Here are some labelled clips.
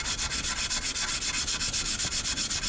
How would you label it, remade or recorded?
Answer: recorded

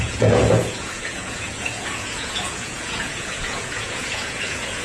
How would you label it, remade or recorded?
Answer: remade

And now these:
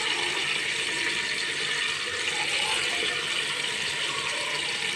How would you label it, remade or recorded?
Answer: recorded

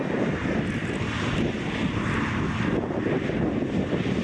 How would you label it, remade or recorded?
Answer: recorded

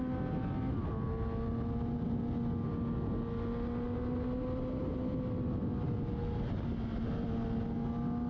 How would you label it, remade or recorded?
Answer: recorded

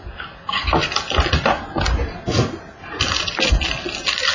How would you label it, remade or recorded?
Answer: recorded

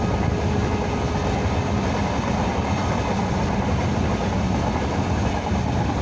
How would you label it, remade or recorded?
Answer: recorded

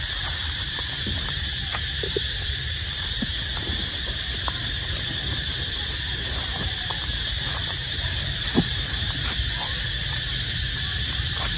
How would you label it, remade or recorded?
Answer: remade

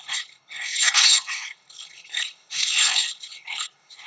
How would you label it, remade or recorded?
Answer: remade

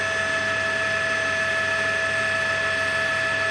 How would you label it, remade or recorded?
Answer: recorded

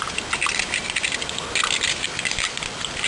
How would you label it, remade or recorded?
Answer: recorded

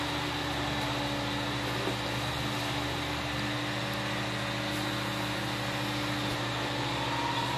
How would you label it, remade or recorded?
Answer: recorded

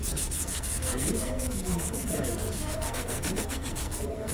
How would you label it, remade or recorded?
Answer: remade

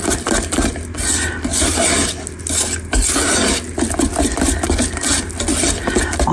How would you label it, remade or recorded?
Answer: recorded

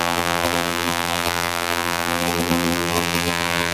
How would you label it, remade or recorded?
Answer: remade